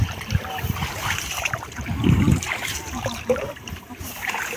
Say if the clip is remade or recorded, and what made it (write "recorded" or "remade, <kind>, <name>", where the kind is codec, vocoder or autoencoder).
remade, vocoder, BigVGAN v2